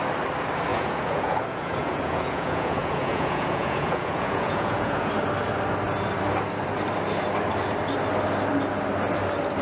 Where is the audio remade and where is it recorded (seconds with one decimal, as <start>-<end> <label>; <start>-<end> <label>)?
0.0-0.7 recorded; 0.7-5.1 remade; 5.1-9.6 recorded